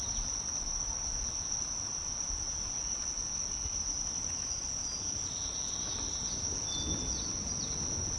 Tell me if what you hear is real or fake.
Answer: real